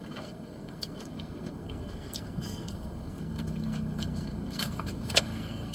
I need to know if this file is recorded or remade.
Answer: remade